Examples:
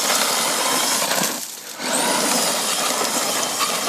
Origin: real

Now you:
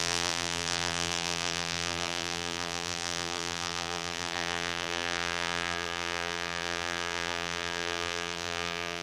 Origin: fake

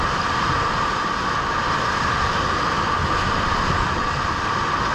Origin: real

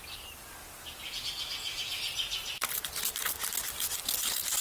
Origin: real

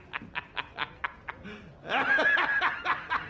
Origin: real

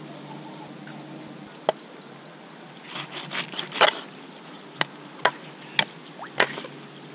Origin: real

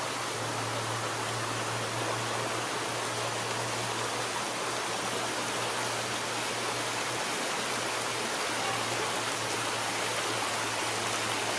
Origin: real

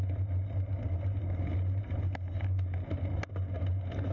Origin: real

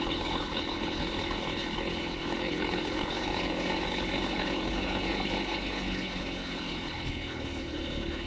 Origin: fake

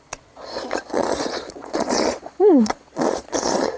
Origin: fake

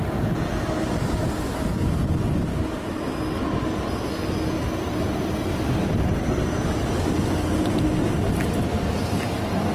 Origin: real